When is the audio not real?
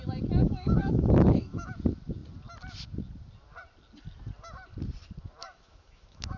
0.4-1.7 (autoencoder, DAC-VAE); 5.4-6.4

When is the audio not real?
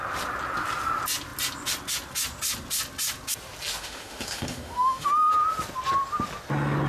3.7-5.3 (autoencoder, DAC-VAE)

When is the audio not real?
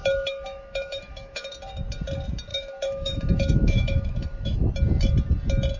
0.0-1.5 (autoencoder, DAC-VAE); 2.5-4.7